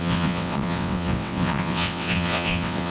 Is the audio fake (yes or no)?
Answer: yes